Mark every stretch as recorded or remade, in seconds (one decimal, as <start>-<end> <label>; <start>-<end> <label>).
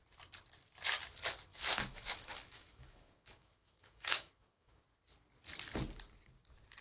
0.0-1.5 recorded; 1.5-4.8 remade; 4.8-6.8 recorded